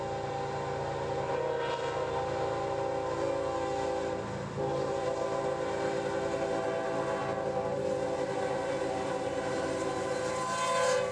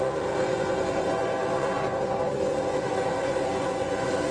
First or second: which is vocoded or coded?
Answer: second